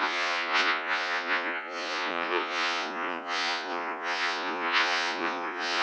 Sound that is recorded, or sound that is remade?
remade